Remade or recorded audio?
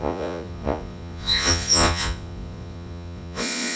remade